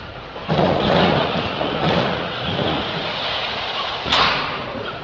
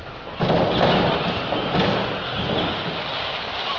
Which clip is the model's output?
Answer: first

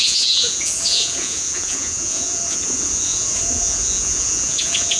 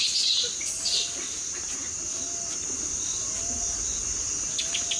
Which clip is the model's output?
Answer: first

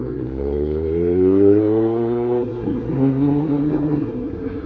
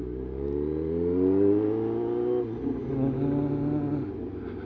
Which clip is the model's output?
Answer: first